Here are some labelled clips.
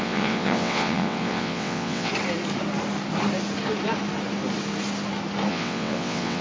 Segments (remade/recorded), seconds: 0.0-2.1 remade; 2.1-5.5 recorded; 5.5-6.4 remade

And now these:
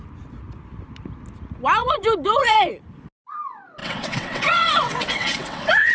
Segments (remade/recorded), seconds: 0.0-1.8 recorded; 1.8-2.7 remade; 2.7-3.8 recorded; 3.8-5.9 remade

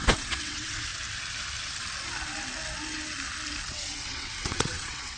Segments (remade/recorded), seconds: 0.0-0.9 remade; 0.9-3.7 recorded; 3.7-5.2 remade

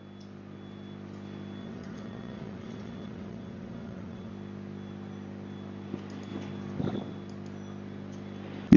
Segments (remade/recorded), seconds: 0.0-1.6 recorded; 1.6-4.3 remade; 4.3-8.8 recorded

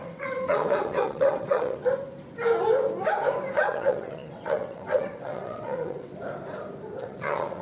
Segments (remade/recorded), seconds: 0.0-1.8 remade; 1.8-3.5 recorded; 3.5-6.1 remade; 6.1-7.0 recorded; 7.0-7.6 remade

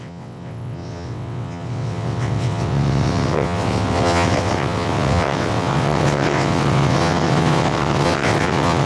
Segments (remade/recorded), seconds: 0.0-8.9 remade

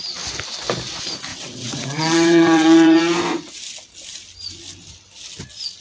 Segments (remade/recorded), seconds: 0.0-1.3 recorded; 1.3-3.0 remade; 3.0-5.8 recorded

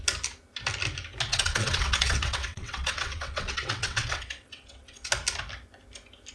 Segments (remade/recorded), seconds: 0.0-1.3 recorded; 1.3-5.1 remade; 5.1-6.3 recorded